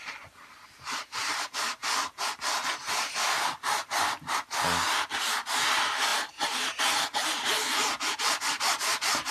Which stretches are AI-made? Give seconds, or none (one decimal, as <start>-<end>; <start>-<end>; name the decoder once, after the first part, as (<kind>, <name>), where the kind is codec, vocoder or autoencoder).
none